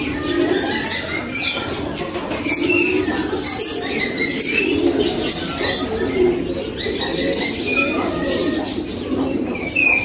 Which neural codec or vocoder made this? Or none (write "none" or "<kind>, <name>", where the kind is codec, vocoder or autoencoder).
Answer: none